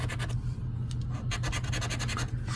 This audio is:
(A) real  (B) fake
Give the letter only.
A